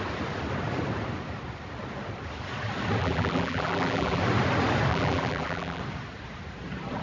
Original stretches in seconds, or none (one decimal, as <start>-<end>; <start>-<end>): 0.0-3.0; 4.2-4.9; 5.8-7.0